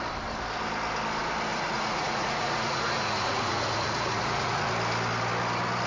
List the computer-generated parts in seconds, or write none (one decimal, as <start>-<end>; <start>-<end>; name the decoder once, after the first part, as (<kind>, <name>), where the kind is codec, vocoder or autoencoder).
1.5-4.7 (vocoder, Vocos)